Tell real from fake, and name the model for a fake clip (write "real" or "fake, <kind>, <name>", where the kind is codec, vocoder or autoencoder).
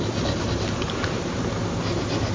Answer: real